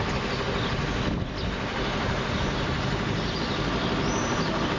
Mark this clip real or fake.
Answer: real